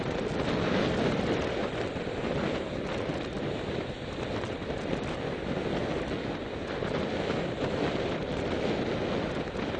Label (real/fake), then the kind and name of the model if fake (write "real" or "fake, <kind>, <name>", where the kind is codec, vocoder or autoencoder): real